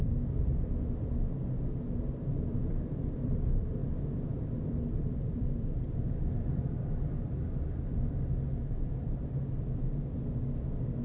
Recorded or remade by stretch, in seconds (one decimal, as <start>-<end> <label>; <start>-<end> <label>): 0.0-0.5 remade; 0.5-2.3 recorded; 2.3-11.0 remade